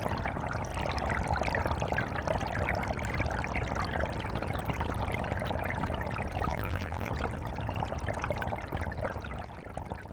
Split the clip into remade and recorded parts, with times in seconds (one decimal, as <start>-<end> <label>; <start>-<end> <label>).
0.0-6.5 recorded; 6.5-7.1 remade; 7.1-10.1 recorded